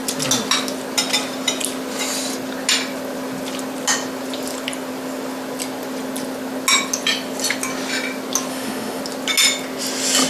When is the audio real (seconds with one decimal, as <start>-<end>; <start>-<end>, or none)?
0.0-8.5; 9.0-10.3